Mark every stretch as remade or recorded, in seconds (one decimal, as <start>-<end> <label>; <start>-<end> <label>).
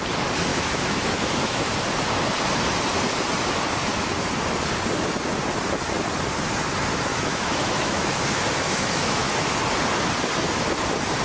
0.0-0.5 recorded; 0.5-1.7 remade; 1.7-7.1 recorded; 7.1-9.6 remade; 9.6-11.2 recorded